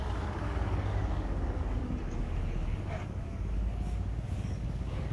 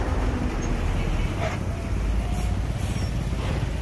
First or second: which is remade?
first